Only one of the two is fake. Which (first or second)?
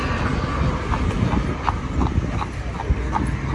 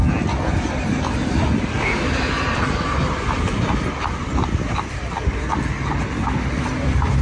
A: second